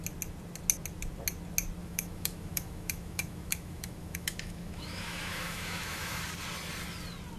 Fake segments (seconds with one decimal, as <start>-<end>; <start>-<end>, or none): 1.8-6.2